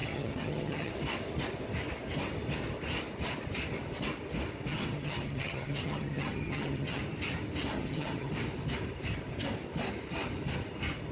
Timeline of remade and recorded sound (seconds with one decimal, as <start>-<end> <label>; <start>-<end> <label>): 0.0-0.9 remade; 0.9-4.7 recorded; 4.7-7.0 remade; 7.0-7.7 recorded; 7.7-8.3 remade; 8.3-11.1 recorded